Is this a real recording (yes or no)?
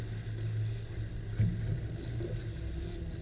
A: yes